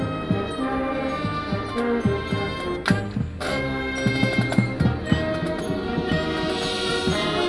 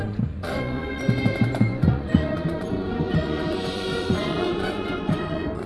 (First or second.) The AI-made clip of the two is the second